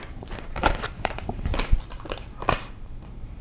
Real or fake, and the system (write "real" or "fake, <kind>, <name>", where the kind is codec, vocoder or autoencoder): fake, vocoder, BigVGAN v2